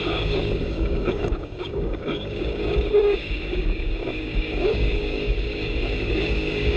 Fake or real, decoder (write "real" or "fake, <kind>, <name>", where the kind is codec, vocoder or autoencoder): fake, codec, DAC